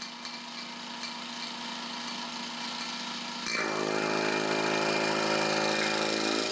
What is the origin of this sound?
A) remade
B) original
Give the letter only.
B